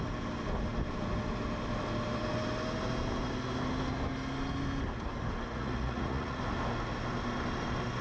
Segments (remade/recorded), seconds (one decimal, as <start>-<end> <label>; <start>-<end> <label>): 0.0-5.5 recorded; 5.5-6.4 remade; 6.4-8.0 recorded